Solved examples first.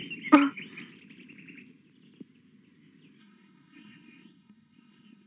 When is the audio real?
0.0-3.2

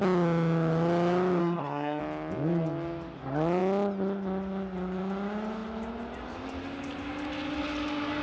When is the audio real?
0.0-1.4; 2.0-8.2

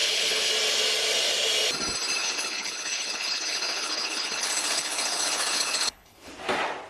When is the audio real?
0.5-2.2; 6.3-6.9

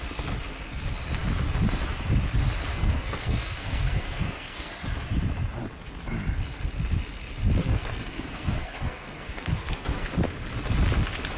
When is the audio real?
0.0-2.7; 4.7-7.6; 10.1-11.4

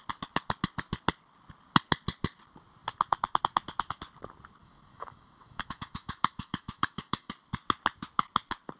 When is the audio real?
0.0-4.6; 7.3-8.8

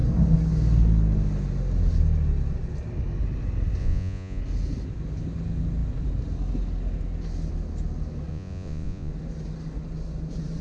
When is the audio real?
0.0-3.8; 4.4-8.3; 9.1-10.6

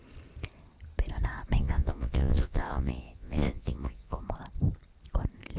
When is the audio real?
0.0-1.6; 4.2-5.6

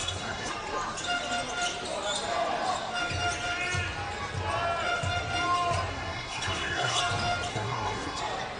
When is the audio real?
0.5-5.9; 7.0-7.5; 8.2-8.6